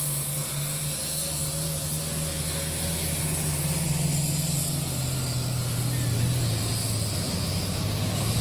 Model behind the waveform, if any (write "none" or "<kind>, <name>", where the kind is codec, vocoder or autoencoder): none